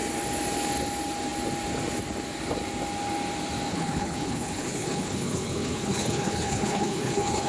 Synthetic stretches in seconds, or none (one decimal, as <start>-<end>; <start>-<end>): 3.7-7.5